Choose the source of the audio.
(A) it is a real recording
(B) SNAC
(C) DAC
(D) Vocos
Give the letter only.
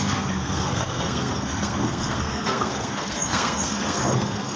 B